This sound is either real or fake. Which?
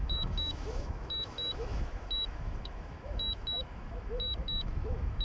fake